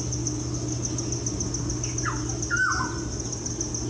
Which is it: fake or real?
real